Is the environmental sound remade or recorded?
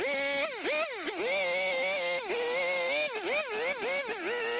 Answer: recorded